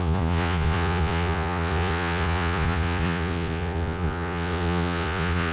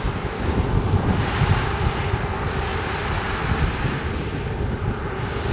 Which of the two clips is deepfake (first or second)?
first